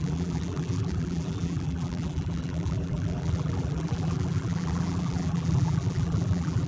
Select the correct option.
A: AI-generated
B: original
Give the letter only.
A